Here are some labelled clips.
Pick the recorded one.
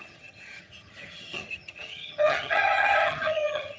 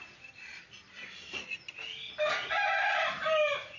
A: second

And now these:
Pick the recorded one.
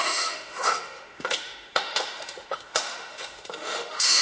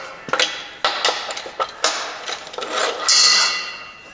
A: second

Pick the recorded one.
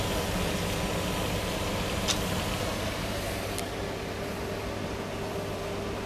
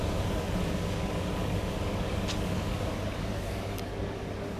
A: first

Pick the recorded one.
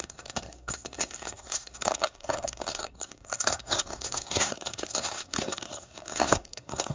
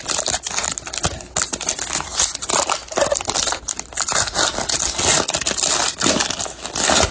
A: second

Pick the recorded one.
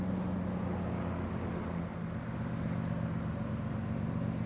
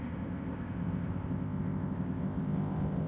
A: first